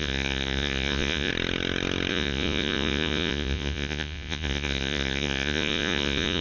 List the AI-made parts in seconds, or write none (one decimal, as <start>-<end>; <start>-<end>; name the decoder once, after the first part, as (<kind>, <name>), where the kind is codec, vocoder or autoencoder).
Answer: 0.0-1.3 (vocoder, Vocos); 2.1-6.4